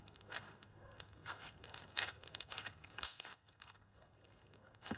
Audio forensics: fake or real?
fake